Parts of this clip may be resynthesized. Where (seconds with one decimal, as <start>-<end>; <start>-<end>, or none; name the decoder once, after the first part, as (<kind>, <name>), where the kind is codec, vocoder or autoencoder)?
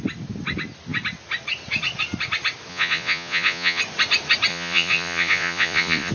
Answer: 2.7-3.8 (vocoder, Vocos); 4.5-6.1